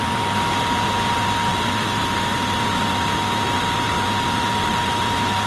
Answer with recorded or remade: recorded